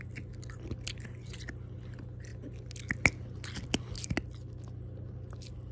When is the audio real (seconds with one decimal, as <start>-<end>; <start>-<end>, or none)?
0.0-5.7

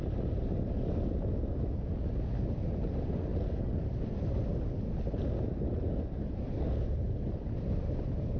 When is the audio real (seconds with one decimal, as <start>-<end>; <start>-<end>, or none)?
0.0-8.4

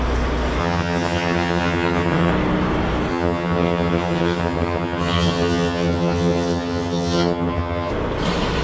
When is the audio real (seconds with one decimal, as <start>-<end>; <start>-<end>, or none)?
0.0-0.6; 2.3-3.1; 7.9-8.6

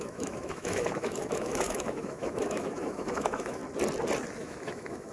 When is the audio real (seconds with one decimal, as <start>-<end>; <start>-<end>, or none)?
3.6-4.4

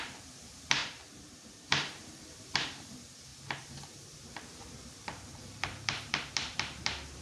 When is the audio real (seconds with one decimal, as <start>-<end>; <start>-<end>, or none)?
none